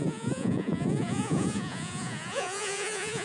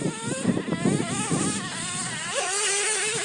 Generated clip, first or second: first